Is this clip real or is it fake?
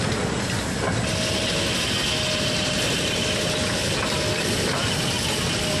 real